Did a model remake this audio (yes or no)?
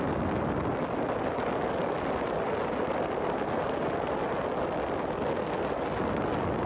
no